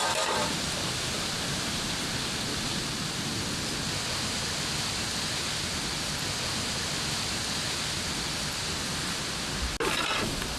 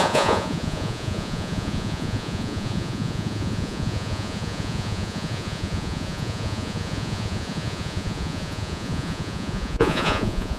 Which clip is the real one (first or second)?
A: first